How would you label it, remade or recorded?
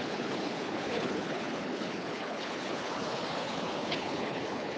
remade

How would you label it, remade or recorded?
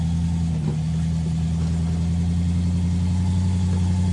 recorded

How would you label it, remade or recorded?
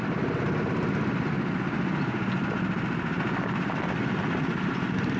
recorded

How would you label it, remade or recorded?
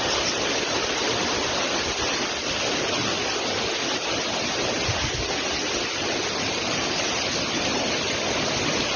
recorded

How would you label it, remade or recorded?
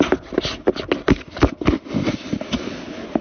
recorded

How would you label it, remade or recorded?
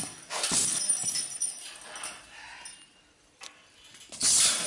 recorded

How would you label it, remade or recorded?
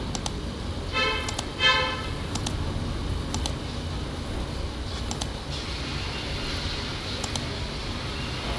recorded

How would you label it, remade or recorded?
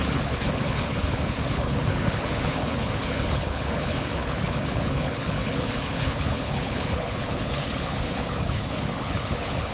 remade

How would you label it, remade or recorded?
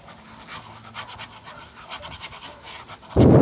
recorded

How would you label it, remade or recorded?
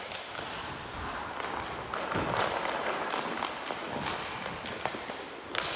recorded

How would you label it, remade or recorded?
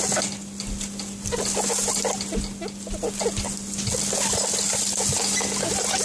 recorded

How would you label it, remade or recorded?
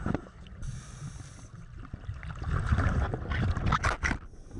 recorded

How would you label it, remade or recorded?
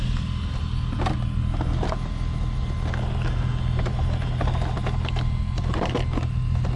recorded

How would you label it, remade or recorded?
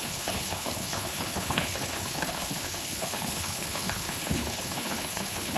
remade